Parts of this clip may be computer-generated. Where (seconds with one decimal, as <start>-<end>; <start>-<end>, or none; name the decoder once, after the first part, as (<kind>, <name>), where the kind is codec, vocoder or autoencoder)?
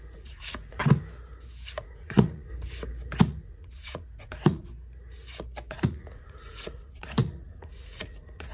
0.0-0.8 (vocoder, Vocos); 1.8-2.5; 3.2-4.7; 5.7-8.5